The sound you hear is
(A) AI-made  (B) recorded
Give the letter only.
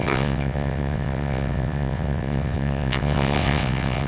A